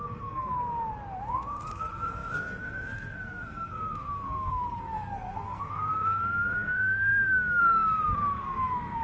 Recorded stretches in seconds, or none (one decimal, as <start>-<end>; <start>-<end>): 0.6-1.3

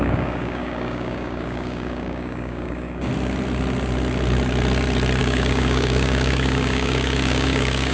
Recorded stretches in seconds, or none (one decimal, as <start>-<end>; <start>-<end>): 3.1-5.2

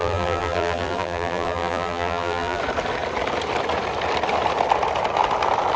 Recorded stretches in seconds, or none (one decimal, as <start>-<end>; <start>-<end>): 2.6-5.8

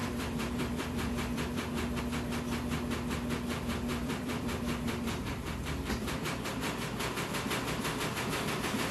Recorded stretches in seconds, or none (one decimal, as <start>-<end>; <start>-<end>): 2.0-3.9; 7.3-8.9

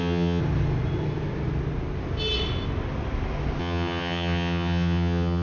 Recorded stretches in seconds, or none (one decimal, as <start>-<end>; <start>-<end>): 0.4-3.6

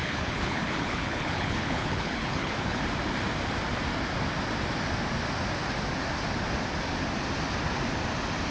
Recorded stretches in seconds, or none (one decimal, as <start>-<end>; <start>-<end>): 2.8-8.5

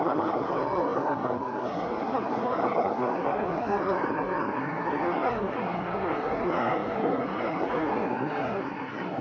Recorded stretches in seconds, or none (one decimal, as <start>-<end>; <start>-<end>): none

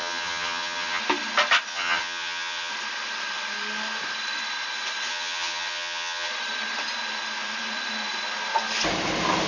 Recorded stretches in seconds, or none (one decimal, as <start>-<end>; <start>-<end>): 1.0-1.7; 2.7-5.1; 6.3-9.5